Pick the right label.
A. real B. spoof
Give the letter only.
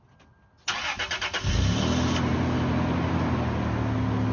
A